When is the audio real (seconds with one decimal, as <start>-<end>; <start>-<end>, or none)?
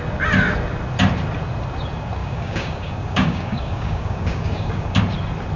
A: 0.0-2.2; 5.0-5.6